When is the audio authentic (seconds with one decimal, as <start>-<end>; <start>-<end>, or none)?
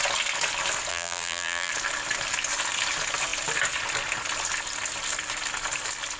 0.0-0.9; 1.7-6.2